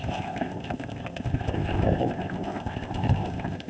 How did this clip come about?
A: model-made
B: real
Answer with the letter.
A